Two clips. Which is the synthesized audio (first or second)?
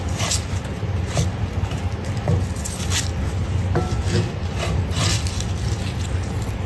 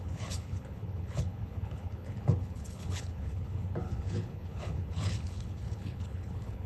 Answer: second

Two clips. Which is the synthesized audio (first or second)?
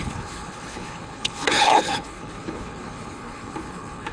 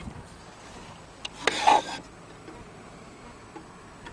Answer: first